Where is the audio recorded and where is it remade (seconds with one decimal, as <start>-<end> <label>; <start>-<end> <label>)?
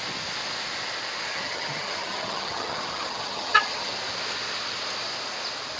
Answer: 0.0-1.3 recorded; 1.3-3.9 remade; 3.9-5.8 recorded